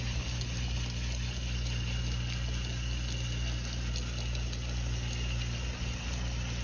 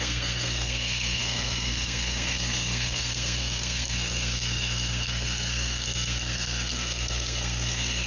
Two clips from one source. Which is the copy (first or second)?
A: second